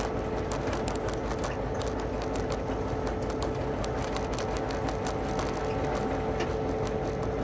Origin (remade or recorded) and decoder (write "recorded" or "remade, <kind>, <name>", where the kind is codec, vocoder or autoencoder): recorded